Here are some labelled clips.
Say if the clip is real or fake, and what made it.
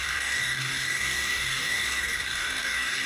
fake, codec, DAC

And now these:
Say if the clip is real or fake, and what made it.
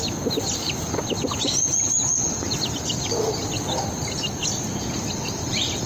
real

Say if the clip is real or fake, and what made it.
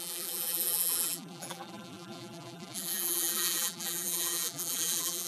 fake, vocoder, BigVGAN v2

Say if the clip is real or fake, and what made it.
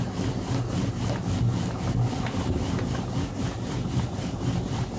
real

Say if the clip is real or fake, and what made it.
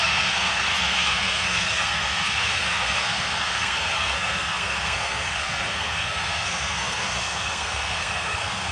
fake, codec, SNAC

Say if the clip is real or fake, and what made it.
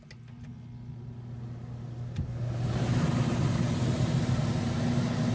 real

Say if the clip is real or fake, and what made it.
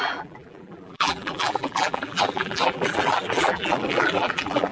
fake, vocoder, BigVGAN v2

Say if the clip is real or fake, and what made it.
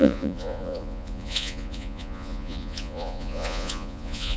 fake, vocoder, Vocos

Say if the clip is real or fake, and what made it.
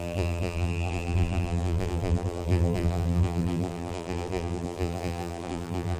fake, vocoder, BigVGAN v2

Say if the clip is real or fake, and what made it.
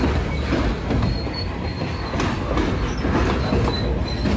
real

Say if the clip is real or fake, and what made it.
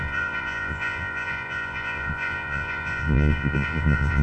fake, vocoder, Vocos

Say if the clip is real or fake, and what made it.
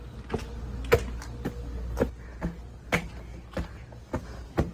real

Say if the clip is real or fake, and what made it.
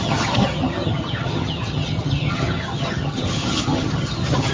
fake, vocoder, HiFi-GAN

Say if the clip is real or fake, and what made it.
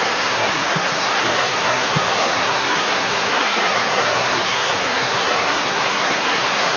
fake, codec, SNAC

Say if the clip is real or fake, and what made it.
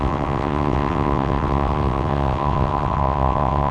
fake, vocoder, WaveNeXt